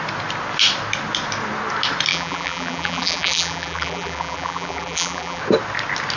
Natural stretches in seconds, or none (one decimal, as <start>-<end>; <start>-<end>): 0.0-2.1; 5.4-6.2